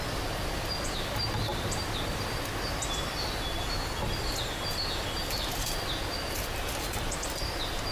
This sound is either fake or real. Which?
real